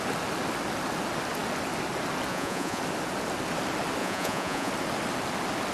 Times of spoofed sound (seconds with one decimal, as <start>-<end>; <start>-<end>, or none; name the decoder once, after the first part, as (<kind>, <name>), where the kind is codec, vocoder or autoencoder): 2.3-2.8 (vocoder, Vocos); 4.0-4.7